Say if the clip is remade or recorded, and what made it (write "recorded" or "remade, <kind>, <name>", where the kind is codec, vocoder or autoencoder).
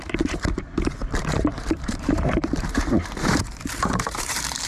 remade, vocoder, BigVGAN v2